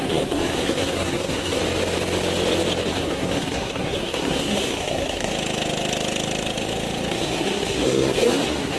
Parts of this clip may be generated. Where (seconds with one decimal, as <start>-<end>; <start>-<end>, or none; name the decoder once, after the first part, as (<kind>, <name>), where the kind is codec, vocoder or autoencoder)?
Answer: 0.0-1.6 (codec, SNAC); 2.9-5.3; 7.1-8.8